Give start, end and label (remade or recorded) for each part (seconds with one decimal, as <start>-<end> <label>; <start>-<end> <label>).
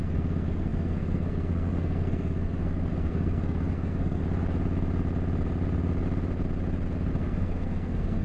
0.0-4.2 remade; 4.2-7.1 recorded; 7.1-8.2 remade